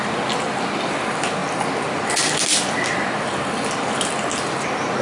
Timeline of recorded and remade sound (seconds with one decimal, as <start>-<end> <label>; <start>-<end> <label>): 0.0-5.0 recorded